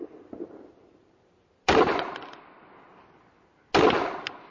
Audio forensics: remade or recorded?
recorded